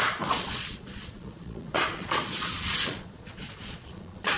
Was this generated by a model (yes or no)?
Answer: yes